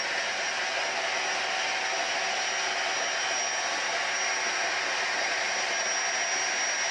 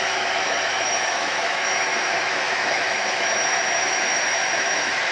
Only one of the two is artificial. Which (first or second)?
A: second